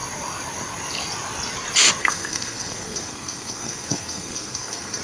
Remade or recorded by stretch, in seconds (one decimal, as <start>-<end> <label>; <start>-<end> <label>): 0.0-2.0 recorded; 2.0-5.0 remade